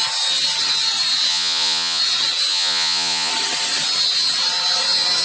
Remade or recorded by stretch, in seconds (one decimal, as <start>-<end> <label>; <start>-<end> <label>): 0.0-1.3 recorded; 1.3-2.0 remade; 2.0-2.5 recorded; 2.5-3.3 remade; 3.3-5.2 recorded